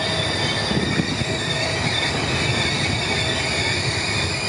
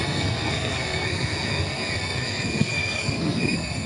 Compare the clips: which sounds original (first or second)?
first